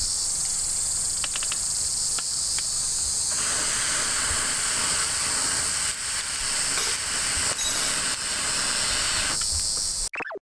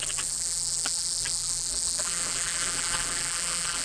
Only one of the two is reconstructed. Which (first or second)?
second